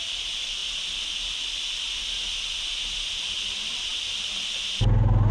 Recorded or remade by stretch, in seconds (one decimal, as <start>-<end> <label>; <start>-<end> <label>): 0.0-5.3 recorded